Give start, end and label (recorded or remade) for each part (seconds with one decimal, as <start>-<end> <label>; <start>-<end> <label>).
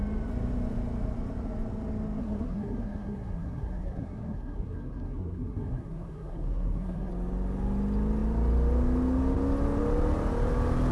0.0-2.2 recorded; 2.2-7.1 remade; 7.1-10.9 recorded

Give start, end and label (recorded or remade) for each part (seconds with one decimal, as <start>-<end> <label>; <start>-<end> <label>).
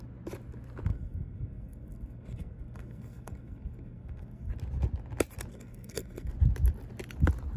0.0-0.9 recorded; 0.9-4.5 remade; 4.5-5.5 recorded; 5.5-6.3 remade; 6.3-7.6 recorded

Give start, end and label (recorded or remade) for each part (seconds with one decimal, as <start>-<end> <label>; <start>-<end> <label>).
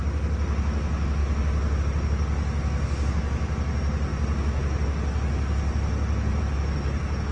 0.0-7.3 recorded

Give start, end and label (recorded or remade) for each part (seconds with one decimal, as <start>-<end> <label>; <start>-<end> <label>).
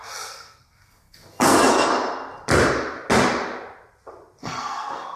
0.0-1.9 remade; 1.9-4.4 recorded; 4.4-5.2 remade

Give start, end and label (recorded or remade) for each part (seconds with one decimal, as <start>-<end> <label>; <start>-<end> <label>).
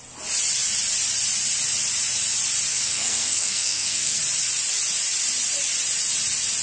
0.0-2.7 recorded; 2.7-4.2 remade; 4.2-6.6 recorded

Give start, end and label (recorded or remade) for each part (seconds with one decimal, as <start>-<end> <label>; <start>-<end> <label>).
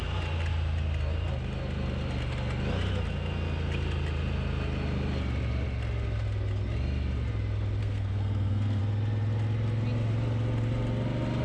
0.0-7.8 recorded; 7.8-8.8 remade; 8.8-11.4 recorded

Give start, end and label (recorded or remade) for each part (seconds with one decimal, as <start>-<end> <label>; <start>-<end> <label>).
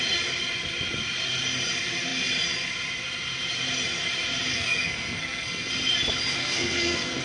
0.0-4.5 recorded; 4.5-5.7 remade; 5.7-6.4 recorded; 6.4-7.2 remade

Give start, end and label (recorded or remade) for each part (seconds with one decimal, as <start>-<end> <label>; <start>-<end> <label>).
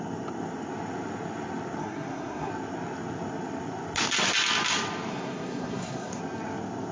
0.0-1.8 recorded; 1.8-2.5 remade; 2.5-5.1 recorded; 5.1-6.2 remade; 6.2-6.9 recorded